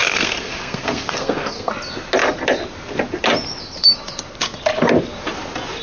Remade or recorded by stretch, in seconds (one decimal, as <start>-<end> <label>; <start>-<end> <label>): 0.0-1.7 remade; 1.7-5.8 recorded